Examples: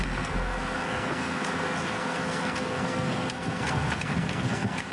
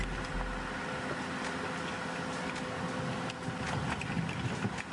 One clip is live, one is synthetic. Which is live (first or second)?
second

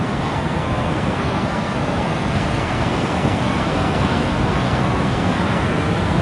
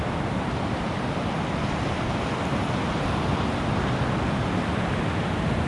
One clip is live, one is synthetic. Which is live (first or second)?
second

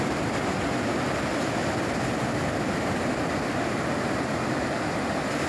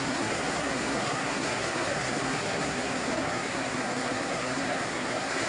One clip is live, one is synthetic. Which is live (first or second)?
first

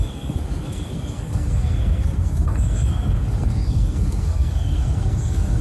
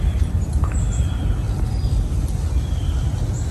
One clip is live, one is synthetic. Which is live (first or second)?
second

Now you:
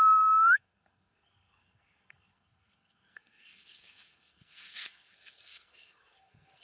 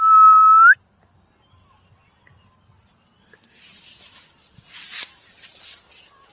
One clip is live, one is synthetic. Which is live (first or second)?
second